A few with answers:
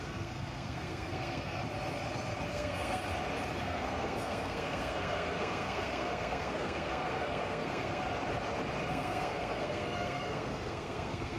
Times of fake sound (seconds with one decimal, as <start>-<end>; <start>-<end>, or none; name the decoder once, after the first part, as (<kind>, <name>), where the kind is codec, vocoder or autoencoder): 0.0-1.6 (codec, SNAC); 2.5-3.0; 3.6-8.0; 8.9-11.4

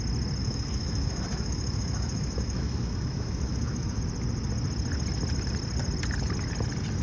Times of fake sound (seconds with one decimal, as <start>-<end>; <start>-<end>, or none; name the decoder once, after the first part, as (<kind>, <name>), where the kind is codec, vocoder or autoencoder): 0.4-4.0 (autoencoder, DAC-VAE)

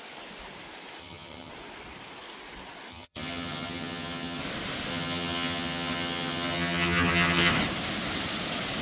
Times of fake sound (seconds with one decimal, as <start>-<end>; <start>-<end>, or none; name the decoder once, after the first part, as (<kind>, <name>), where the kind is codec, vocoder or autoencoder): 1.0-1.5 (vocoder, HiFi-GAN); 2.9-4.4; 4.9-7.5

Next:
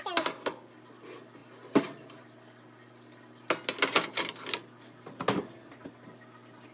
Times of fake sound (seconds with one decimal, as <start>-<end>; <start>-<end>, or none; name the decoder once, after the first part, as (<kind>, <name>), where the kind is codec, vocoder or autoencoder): none

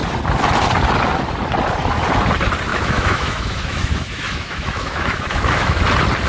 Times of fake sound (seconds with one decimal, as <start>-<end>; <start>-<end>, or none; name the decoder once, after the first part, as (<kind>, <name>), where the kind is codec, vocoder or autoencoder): 2.7-5.8 (autoencoder, DAC-VAE)

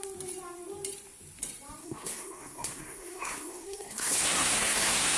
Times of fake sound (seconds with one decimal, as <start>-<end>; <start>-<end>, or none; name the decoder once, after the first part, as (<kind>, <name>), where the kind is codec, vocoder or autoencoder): 1.8-5.2 (codec, SNAC)

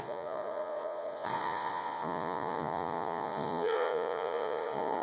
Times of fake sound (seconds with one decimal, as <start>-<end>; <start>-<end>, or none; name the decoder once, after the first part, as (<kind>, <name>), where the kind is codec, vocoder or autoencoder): 0.0-5.0 (vocoder, Vocos)